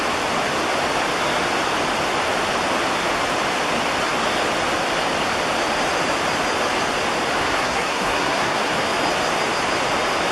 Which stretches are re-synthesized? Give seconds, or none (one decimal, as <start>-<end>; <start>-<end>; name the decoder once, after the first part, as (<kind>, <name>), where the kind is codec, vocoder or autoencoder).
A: 7.4-8.7 (codec, SNAC)